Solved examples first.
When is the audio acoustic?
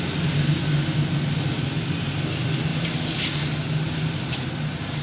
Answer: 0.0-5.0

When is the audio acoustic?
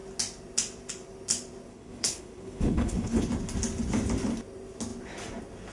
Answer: 0.0-1.7; 3.3-5.7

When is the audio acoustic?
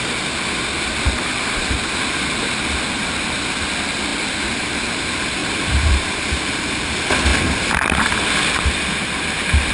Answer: 0.0-9.7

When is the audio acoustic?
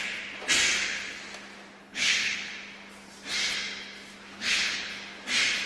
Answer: 0.0-1.8; 2.5-4.3; 4.9-5.7